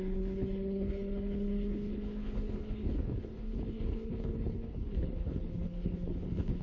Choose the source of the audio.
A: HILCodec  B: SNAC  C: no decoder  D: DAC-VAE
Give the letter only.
A